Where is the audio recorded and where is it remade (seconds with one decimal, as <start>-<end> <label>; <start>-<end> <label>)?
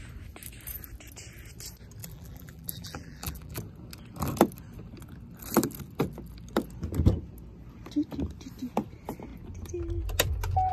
0.0-2.0 recorded; 2.0-3.6 remade; 3.6-10.7 recorded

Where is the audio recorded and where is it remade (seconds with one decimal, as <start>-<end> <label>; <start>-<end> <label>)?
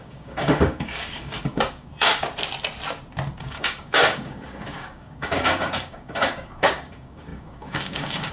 0.0-2.1 remade; 2.1-3.4 recorded; 3.4-8.3 remade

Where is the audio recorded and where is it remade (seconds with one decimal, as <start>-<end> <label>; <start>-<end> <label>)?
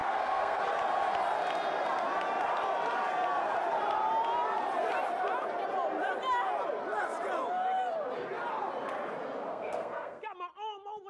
0.0-0.6 remade; 0.6-9.5 recorded; 9.5-10.2 remade; 10.2-11.1 recorded